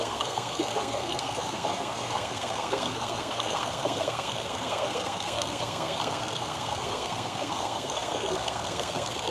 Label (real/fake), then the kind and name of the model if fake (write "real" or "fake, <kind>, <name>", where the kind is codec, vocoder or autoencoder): fake, codec, SNAC